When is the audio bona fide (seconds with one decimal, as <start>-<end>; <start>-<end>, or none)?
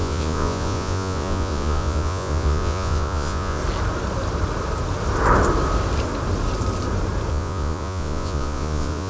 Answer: 3.6-7.3